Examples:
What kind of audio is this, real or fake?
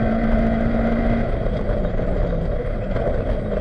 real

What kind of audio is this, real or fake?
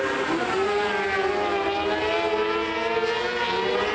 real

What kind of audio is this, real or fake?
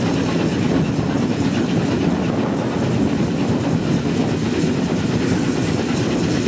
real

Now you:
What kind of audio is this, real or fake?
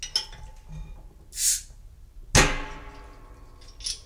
real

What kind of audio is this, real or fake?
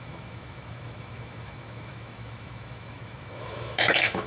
fake